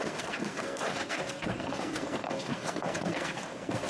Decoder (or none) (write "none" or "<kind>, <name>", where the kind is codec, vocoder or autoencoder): codec, SNAC